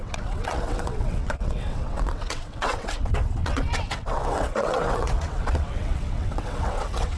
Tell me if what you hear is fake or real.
fake